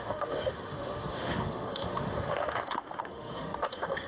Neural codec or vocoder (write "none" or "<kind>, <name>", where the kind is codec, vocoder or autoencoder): autoencoder, DAC-VAE